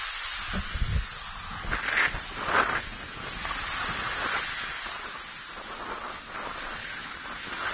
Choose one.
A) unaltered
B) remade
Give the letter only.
A